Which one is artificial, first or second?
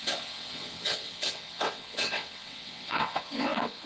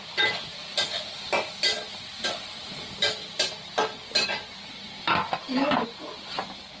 first